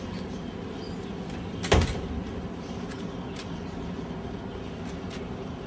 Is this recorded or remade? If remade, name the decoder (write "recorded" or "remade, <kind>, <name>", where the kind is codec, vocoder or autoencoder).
recorded